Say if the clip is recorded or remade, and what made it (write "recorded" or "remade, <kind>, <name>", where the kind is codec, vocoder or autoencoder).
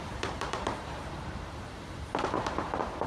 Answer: remade, vocoder, BigVGAN v2